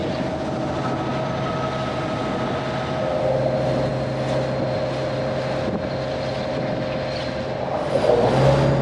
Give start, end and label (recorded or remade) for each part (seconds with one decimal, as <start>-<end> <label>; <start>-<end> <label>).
0.0-8.8 recorded